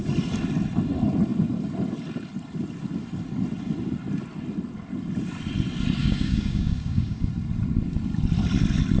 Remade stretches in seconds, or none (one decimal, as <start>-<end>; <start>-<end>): 6.0-7.3